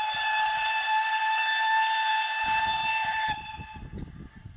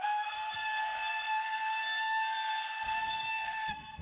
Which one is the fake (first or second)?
second